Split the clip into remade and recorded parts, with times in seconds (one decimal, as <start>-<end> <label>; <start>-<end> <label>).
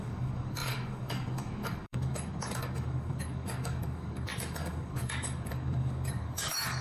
0.0-6.8 remade